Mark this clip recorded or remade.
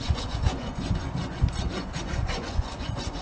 remade